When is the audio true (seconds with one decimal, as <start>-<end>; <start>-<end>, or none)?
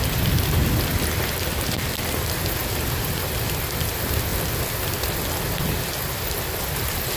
0.0-7.2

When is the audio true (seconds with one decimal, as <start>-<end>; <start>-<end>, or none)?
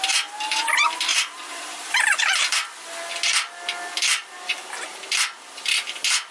0.0-1.1; 2.2-4.2; 5.0-6.3